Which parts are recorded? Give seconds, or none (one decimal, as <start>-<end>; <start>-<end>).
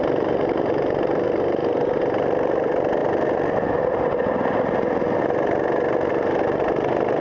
1.6-2.1; 3.0-6.1